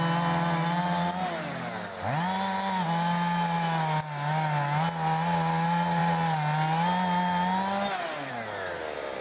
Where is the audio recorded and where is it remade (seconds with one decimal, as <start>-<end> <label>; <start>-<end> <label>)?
0.0-9.2 recorded